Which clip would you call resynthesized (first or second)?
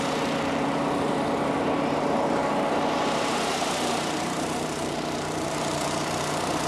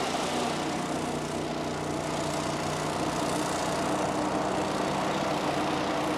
first